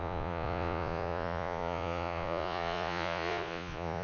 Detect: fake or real fake